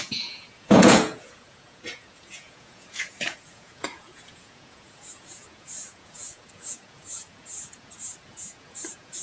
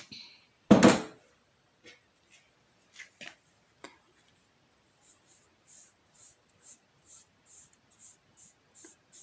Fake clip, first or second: first